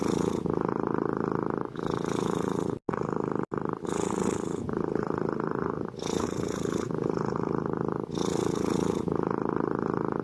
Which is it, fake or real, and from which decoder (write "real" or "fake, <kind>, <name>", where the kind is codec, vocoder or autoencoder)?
real